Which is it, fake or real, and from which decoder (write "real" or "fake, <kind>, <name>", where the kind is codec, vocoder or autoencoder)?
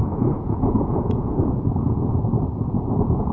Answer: fake, vocoder, Vocos